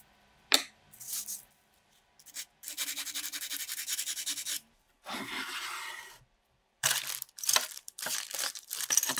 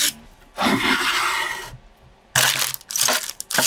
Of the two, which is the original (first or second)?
second